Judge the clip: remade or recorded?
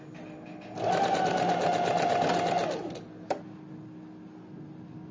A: recorded